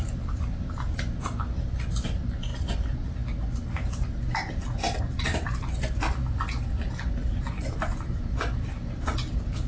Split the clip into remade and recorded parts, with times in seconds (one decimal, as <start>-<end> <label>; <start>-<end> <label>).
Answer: 0.0-9.7 recorded